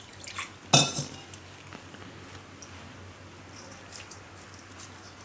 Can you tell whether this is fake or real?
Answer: real